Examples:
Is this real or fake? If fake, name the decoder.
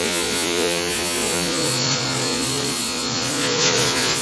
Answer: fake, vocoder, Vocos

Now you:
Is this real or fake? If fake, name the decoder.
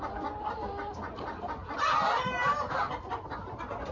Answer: real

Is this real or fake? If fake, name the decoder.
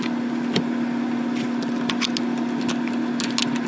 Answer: real